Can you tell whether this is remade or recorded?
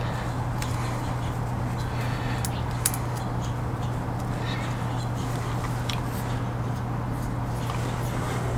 recorded